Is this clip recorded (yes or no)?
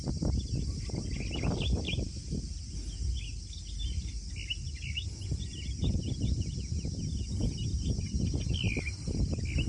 yes